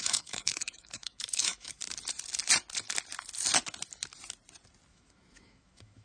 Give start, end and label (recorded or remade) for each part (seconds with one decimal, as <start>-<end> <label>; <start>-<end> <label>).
0.0-1.8 remade; 1.8-4.9 recorded; 4.9-6.0 remade